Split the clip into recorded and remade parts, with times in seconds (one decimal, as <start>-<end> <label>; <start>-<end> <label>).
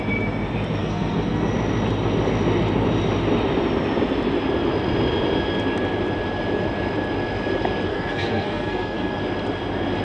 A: 0.0-0.8 recorded; 0.8-1.5 remade; 1.5-7.9 recorded; 7.9-9.2 remade; 9.2-10.0 recorded